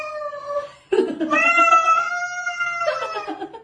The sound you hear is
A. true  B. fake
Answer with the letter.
A